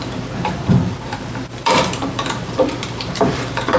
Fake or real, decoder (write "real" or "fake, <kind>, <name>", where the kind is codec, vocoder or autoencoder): fake, vocoder, BigVGAN v2